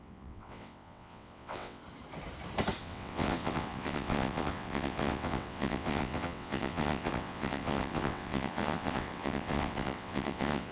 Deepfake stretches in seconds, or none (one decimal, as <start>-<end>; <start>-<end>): 0.0-1.8; 2.8-10.7